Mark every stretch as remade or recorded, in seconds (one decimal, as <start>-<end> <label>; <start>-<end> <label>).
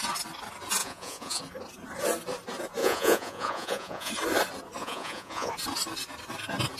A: 0.0-0.8 recorded; 0.8-1.4 remade; 1.4-2.8 recorded; 2.8-4.1 remade; 4.1-4.8 recorded; 4.8-5.5 remade; 5.5-6.8 recorded